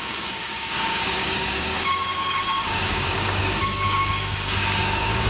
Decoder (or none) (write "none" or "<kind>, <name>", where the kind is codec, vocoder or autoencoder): codec, DAC